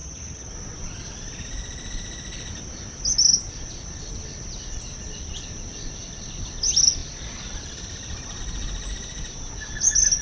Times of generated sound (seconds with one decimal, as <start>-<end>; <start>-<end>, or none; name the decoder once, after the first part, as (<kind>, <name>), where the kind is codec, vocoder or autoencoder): 0.0-0.5 (vocoder, HiFi-GAN)